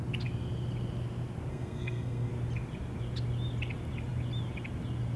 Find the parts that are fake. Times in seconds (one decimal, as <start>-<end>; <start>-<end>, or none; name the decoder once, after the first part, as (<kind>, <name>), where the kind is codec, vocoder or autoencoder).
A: 1.5-2.3 (codec, SNAC)